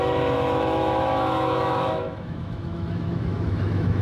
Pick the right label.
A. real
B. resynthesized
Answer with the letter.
B